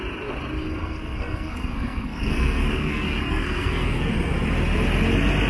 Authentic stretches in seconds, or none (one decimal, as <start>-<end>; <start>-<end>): 0.0-0.8; 4.1-5.5